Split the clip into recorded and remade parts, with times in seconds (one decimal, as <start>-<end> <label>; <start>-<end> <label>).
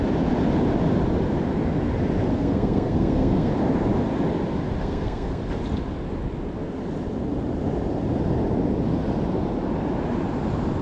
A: 0.0-2.3 recorded; 2.3-3.5 remade; 3.5-4.8 recorded; 4.8-5.4 remade; 5.4-10.8 recorded